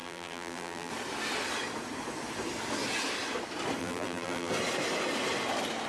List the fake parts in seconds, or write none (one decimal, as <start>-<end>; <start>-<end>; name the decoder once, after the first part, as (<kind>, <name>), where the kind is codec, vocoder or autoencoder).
0.0-0.9 (vocoder, BigVGAN v2); 3.8-4.5